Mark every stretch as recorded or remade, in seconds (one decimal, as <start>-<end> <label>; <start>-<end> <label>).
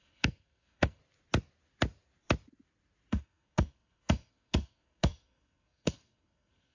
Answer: 0.0-1.0 remade; 1.0-3.1 recorded; 3.1-6.7 remade